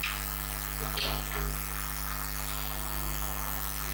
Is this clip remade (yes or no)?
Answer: no